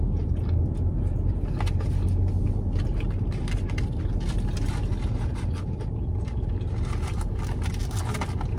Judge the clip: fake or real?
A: real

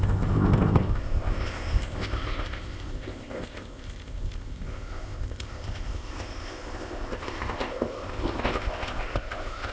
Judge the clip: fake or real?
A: fake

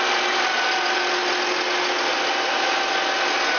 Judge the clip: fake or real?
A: real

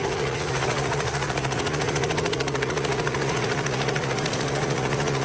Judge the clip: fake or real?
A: fake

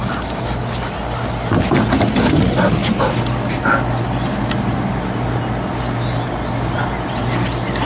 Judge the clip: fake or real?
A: real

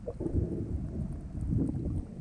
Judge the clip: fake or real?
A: real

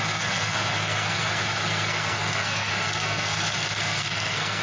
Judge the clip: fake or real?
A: fake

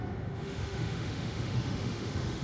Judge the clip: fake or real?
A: fake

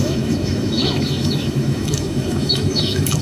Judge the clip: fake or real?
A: fake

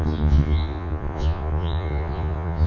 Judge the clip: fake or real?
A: fake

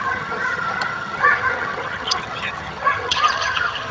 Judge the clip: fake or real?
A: fake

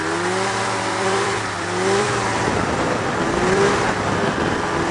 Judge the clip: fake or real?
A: fake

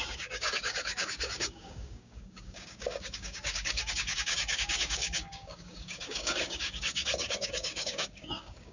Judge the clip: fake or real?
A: fake